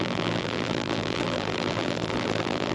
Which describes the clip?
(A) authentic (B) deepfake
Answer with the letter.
B